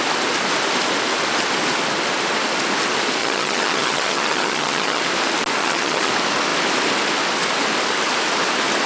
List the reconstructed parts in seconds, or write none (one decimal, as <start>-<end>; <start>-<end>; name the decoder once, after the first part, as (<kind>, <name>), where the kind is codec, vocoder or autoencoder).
3.2-5.0 (vocoder, HiFi-GAN); 5.6-6.1